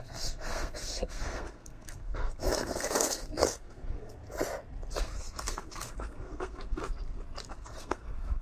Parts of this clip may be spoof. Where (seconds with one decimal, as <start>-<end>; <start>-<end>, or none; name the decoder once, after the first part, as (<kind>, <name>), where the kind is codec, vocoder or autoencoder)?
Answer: 0.0-4.2 (codec, SNAC); 5.0-6.8; 7.5-8.4